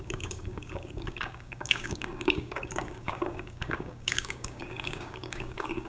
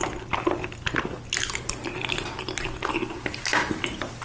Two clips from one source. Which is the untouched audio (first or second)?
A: second